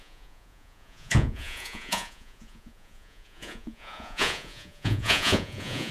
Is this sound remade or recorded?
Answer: remade